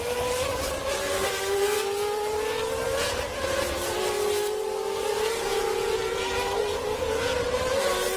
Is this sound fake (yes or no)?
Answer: yes